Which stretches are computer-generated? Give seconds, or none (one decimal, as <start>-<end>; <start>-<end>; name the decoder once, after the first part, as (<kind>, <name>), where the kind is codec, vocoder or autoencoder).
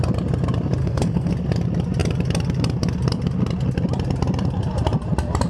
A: 0.8-1.3 (codec, SNAC)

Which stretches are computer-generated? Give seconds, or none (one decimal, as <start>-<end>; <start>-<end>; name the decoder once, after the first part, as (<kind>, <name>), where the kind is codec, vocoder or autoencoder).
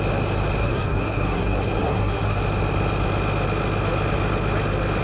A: 0.6-2.4 (codec, SNAC)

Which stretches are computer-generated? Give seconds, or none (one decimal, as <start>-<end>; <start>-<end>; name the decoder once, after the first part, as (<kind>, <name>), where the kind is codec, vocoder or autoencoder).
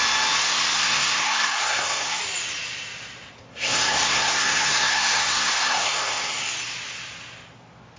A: 0.4-2.2 (codec, SNAC); 3.5-6.5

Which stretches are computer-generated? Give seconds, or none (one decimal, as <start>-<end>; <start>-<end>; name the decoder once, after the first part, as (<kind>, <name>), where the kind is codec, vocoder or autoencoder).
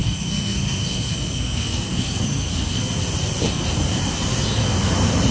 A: 0.0-2.8 (codec, SNAC)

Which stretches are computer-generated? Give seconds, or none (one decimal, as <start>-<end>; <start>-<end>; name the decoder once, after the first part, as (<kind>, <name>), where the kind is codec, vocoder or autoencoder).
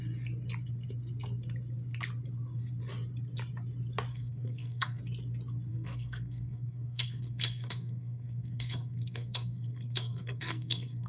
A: 4.1-5.0 (codec, SNAC); 5.7-11.1